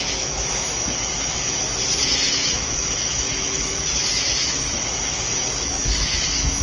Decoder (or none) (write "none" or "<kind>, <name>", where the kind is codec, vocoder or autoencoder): autoencoder, DAC-VAE